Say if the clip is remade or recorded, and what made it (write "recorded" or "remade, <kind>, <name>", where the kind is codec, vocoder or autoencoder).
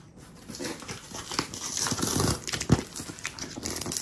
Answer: recorded